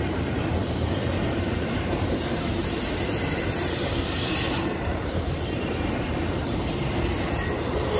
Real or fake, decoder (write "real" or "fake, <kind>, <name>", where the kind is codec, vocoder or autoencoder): fake, vocoder, BigVGAN v2